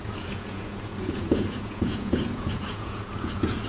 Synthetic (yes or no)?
yes